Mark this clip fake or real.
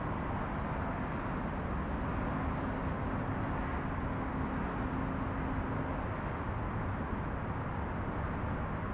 real